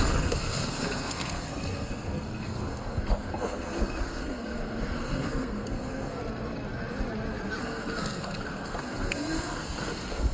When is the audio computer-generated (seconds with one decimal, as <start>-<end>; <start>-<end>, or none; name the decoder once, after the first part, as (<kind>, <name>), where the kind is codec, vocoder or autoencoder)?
0.0-6.2 (codec, SNAC); 7.6-10.3